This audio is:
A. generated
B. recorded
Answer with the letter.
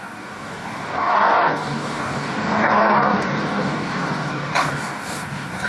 A